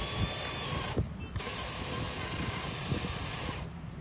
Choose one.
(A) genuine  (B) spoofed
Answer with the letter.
A